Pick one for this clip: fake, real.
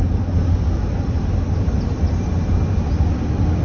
real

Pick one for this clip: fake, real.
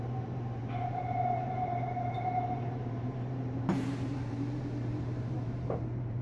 fake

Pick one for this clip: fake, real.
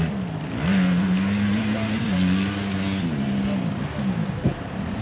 real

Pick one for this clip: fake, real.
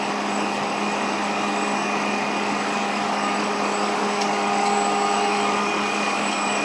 fake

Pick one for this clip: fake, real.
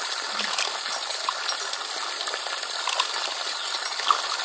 real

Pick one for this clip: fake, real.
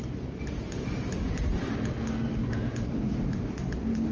real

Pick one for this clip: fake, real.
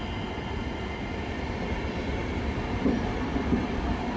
real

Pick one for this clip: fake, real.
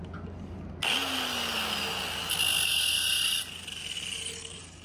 real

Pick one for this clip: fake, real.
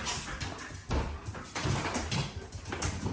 real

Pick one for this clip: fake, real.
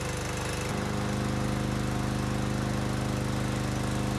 real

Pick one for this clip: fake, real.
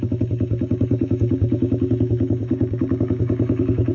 fake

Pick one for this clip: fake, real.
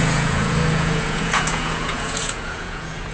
fake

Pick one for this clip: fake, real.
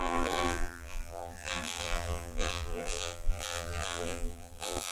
fake